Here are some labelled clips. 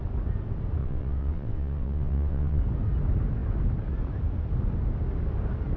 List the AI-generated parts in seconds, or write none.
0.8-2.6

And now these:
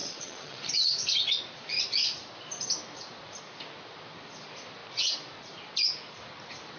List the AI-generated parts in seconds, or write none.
0.0-0.7

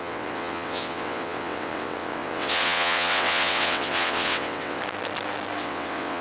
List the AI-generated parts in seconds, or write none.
0.0-4.8; 5.6-6.2

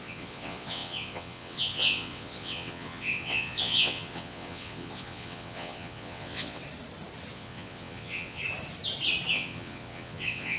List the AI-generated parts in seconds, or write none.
0.0-6.6; 7.3-8.4; 9.3-10.6

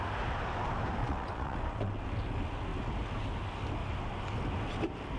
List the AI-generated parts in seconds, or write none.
1.0-2.0

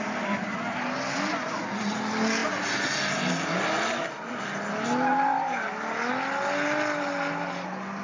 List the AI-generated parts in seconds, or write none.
none

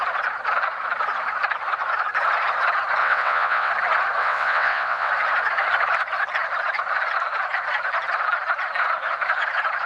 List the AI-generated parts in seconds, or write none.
3.0-3.7; 4.2-5.1